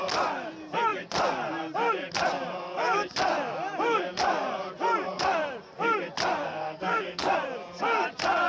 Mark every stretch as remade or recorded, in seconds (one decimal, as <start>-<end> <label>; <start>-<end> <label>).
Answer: 0.0-6.4 recorded; 6.4-7.3 remade; 7.3-8.5 recorded